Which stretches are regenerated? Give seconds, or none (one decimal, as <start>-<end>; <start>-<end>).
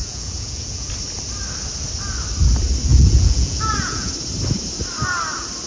0.0-0.9; 2.9-4.1